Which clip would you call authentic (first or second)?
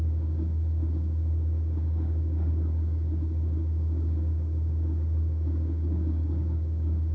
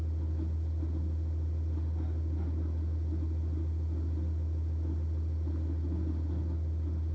second